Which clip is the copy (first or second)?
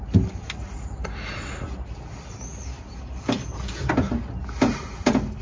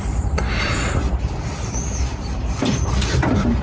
second